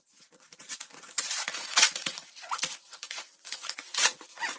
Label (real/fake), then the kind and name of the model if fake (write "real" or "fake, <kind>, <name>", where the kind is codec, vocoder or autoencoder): fake, vocoder, Vocos